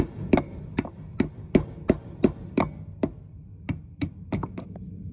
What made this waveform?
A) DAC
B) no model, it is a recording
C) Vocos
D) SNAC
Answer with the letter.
B